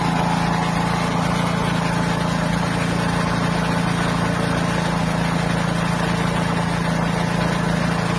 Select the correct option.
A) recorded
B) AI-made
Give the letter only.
A